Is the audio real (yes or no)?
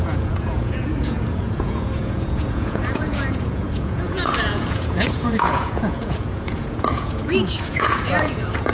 no